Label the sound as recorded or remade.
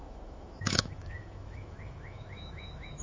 remade